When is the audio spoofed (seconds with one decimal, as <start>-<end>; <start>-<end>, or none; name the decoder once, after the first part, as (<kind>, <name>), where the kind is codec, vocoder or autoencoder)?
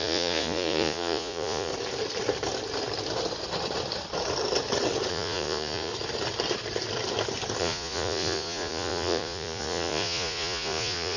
0.0-1.7 (vocoder, Vocos); 5.1-5.9; 7.6-11.2